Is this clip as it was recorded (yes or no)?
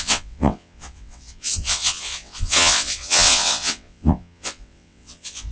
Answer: no